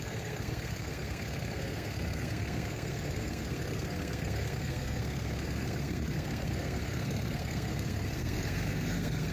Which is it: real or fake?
fake